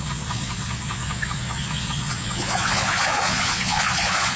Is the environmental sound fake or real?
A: fake